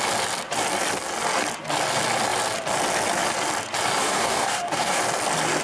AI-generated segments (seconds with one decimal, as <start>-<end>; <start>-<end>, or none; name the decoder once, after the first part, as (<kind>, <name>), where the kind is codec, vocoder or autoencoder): 4.0-5.0 (codec, DAC)

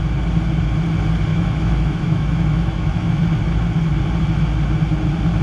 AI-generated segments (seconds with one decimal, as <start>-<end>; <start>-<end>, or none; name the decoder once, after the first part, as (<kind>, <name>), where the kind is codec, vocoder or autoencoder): 1.3-3.2 (autoencoder, DAC-VAE)

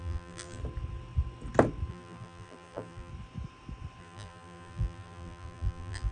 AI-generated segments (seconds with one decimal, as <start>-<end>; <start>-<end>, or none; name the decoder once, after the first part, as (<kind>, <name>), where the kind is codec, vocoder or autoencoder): 0.0-0.6 (vocoder, BigVGAN v2); 1.9-3.1; 4.0-6.1

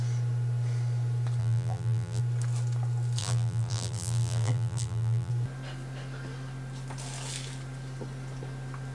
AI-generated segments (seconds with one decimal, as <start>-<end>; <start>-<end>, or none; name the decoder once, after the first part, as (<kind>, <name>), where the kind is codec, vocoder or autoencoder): 1.4-2.2 (vocoder, BigVGAN v2); 3.2-5.3

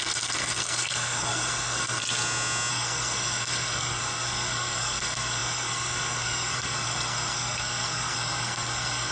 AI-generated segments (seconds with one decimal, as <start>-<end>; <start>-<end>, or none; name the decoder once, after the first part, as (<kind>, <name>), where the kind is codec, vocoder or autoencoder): 0.0-2.0 (codec, SNAC); 2.7-9.1

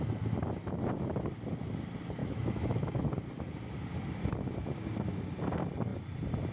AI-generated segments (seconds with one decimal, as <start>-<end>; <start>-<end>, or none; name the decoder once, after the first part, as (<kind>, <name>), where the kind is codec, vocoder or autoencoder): 2.2-3.1 (autoencoder, DAC-VAE)